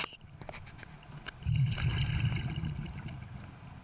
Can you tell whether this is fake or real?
real